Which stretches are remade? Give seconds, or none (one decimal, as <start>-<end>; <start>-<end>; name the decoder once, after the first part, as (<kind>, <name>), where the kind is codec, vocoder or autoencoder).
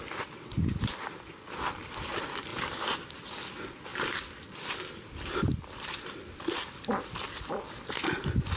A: 2.5-3.2 (vocoder, BigVGAN v2); 3.9-7.5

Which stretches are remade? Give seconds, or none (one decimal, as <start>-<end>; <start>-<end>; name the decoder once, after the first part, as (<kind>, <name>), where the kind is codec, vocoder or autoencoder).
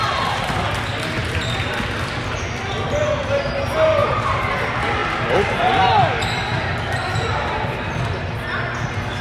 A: 4.0-4.5 (vocoder, BigVGAN v2)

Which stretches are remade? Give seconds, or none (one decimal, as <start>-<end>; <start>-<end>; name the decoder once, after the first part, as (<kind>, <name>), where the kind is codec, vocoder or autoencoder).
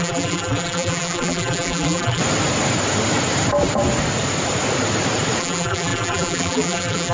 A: 0.0-2.2 (vocoder, BigVGAN v2); 5.4-7.1